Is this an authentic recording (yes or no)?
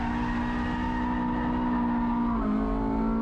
yes